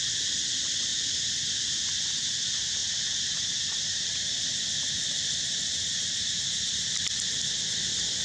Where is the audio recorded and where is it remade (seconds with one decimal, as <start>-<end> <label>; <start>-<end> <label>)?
0.0-8.2 recorded